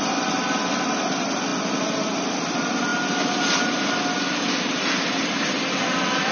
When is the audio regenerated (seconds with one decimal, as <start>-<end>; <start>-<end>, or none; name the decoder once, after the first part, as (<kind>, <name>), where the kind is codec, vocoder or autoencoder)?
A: none